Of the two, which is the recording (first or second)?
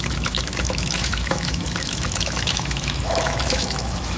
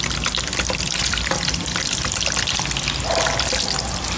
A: second